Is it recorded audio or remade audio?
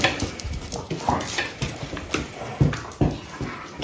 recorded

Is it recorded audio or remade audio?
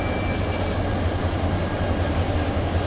recorded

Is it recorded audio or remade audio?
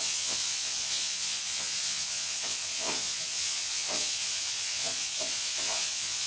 remade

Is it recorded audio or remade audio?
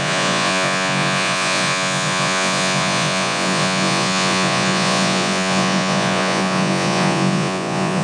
remade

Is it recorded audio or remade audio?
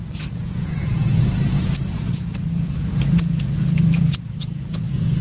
remade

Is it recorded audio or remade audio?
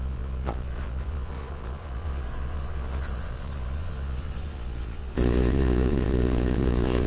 remade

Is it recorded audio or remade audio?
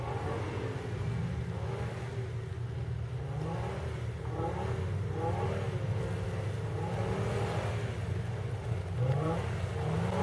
recorded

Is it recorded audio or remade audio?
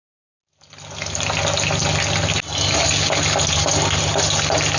recorded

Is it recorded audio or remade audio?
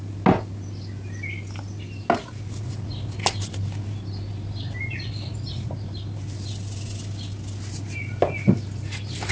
recorded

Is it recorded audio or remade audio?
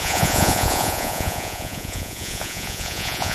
remade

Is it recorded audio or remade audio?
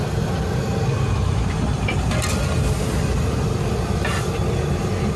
recorded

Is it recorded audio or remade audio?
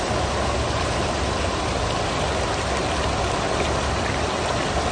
recorded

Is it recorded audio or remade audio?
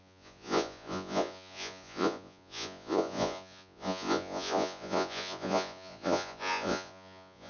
remade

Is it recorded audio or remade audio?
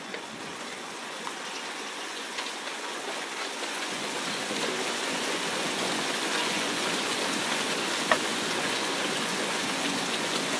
remade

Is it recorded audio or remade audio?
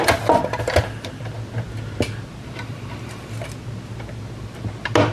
recorded